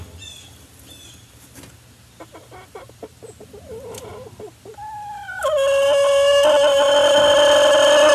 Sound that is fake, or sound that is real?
real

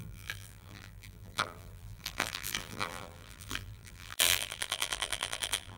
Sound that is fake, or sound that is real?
fake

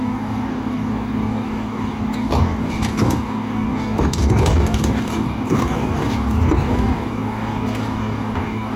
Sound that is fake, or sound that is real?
fake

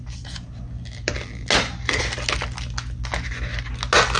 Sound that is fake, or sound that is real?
real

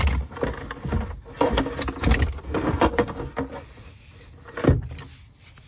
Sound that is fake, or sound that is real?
real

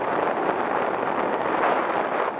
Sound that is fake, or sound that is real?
real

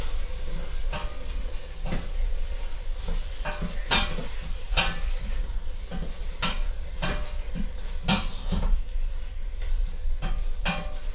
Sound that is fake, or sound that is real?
real